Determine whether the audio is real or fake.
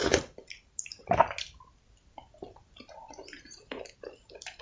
real